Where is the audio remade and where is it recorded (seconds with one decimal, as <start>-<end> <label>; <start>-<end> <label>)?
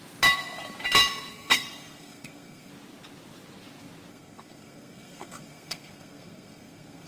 0.0-1.3 recorded; 1.3-2.7 remade; 2.7-4.1 recorded; 4.1-7.1 remade